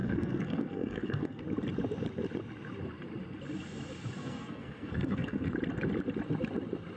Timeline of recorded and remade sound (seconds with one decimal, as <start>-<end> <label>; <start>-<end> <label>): 0.0-1.4 remade; 1.4-4.2 recorded; 4.2-5.5 remade; 5.5-7.0 recorded